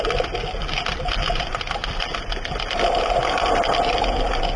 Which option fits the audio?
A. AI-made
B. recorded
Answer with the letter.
B